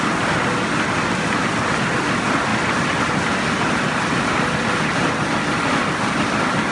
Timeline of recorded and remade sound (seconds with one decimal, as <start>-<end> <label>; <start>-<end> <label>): 0.0-6.7 recorded